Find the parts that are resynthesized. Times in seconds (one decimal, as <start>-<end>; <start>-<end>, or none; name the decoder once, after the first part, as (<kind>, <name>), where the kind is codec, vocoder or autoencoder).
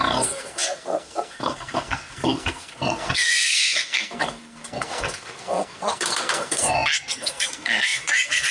0.0-8.5 (codec, SNAC)